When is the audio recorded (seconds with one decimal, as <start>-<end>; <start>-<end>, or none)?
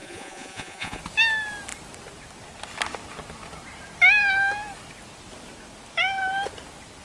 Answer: 1.0-7.0